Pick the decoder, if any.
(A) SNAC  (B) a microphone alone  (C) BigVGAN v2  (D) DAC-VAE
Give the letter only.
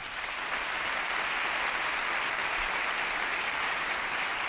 B